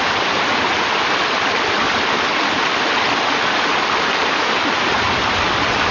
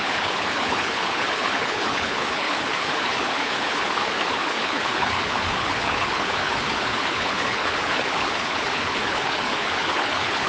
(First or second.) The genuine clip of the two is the first